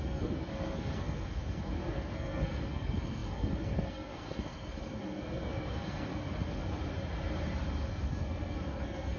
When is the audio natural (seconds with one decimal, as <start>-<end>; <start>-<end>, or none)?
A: 6.1-7.9